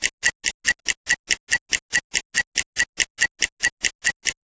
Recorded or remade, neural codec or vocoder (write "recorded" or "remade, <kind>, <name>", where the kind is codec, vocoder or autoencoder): recorded